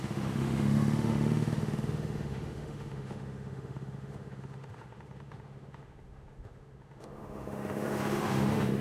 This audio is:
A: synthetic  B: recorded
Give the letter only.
A